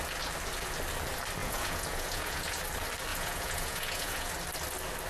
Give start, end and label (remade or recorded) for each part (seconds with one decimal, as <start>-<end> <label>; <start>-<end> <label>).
0.0-1.4 recorded; 1.4-2.6 remade; 2.6-3.1 recorded; 3.1-4.3 remade; 4.3-5.1 recorded